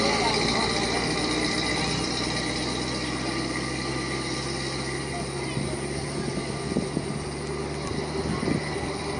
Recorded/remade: recorded